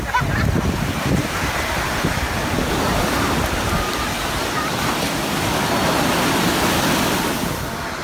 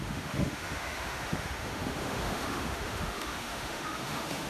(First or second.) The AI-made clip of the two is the second